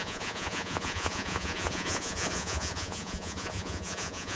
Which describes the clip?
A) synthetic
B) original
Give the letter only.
A